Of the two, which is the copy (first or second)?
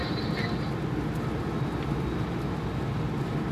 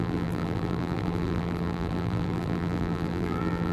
second